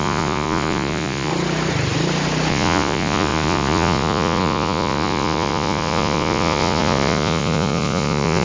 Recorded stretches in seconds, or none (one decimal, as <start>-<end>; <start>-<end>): 1.3-2.5